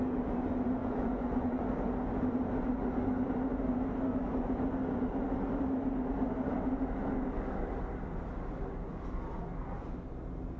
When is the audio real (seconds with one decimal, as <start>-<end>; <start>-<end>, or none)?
0.0-0.8; 1.6-10.6